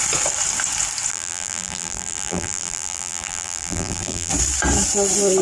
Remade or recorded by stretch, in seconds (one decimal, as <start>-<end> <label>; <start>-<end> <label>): 0.0-1.1 recorded; 1.1-4.3 remade; 4.3-5.4 recorded